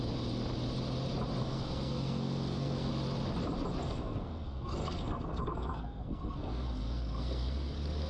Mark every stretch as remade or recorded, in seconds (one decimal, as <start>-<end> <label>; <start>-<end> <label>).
0.0-1.4 recorded; 1.4-2.9 remade; 2.9-3.8 recorded; 3.8-8.1 remade